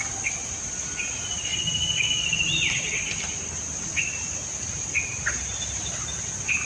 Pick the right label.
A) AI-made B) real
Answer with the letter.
B